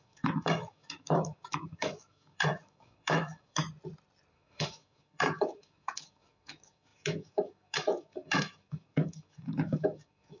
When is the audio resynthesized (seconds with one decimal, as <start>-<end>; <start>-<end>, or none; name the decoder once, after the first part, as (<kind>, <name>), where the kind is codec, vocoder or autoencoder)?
0.0-3.6 (autoencoder, DAC-VAE); 4.3-10.4